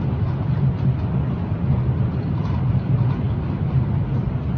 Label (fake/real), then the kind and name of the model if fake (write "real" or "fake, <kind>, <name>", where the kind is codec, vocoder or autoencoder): real